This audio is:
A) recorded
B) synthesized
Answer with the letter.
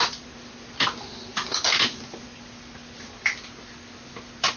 A